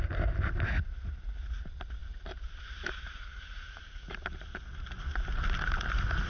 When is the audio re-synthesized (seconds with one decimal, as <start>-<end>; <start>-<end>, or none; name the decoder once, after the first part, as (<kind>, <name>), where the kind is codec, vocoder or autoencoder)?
none